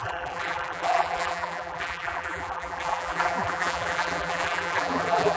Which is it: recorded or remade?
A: remade